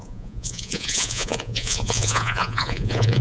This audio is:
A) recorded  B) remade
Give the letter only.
B